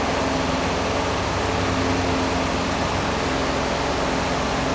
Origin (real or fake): real